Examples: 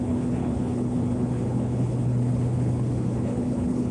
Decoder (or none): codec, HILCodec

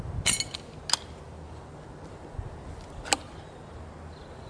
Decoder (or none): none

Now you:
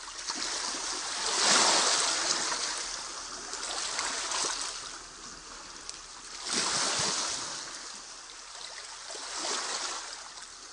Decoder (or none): none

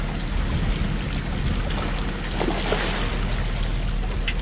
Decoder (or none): none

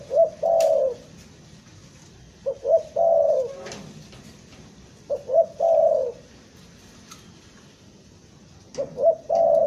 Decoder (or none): none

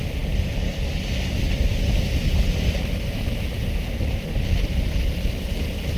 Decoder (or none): none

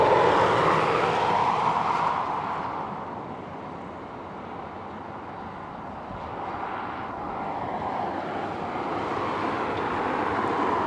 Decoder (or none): none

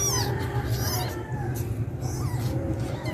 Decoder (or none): none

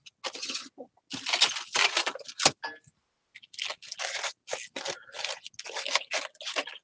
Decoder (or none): none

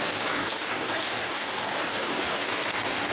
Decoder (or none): codec, DAC